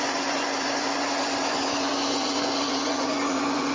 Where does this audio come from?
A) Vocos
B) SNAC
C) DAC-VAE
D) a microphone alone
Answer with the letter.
A